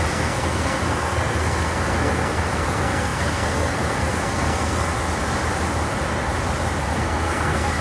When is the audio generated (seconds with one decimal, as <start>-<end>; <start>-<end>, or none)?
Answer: 0.0-4.9; 6.8-7.8